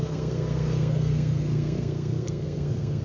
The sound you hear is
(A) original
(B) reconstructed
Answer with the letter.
B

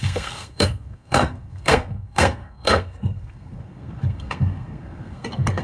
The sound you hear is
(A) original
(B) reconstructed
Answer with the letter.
B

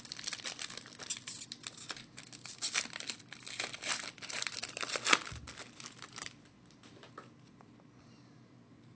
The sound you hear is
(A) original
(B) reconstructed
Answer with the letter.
A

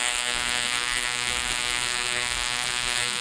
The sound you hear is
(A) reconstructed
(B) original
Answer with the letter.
A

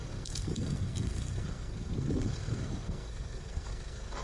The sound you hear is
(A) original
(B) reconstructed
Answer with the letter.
B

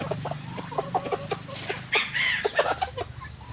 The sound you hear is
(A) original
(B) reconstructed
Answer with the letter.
A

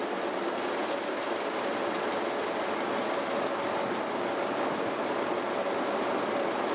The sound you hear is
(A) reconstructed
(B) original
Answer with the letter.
B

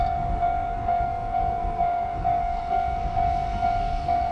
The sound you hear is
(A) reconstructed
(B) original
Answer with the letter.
A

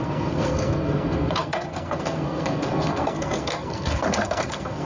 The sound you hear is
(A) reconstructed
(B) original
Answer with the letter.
A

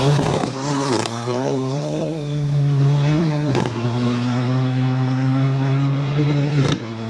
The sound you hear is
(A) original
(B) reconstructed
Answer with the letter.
B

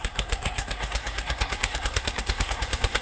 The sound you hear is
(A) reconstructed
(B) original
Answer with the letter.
A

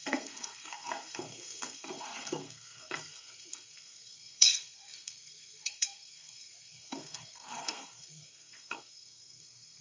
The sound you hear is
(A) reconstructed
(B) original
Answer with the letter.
A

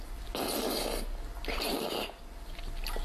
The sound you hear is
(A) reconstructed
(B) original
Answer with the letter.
B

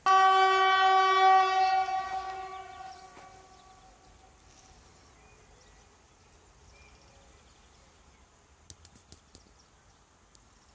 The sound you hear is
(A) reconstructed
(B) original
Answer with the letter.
B